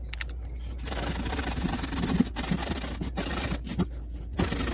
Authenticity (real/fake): real